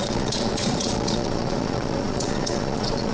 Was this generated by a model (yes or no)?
yes